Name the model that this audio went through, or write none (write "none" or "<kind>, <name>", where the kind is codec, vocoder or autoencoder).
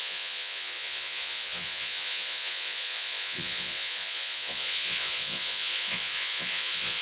vocoder, Vocos